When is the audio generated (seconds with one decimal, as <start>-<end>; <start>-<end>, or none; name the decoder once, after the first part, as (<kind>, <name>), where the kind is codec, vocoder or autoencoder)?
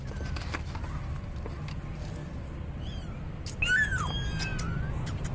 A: none